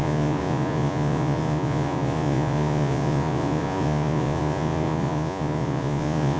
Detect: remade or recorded remade